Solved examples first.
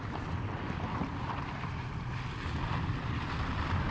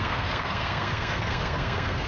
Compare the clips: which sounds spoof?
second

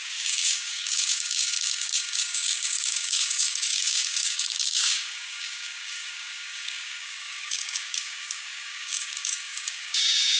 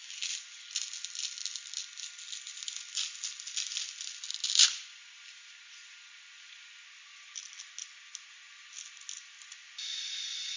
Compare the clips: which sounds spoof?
first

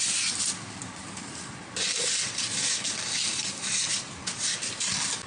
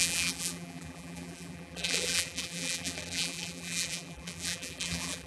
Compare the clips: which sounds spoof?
second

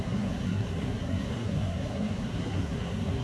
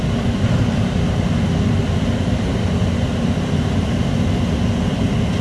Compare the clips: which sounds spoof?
first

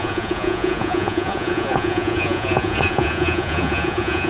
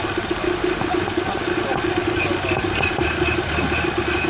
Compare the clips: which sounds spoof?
first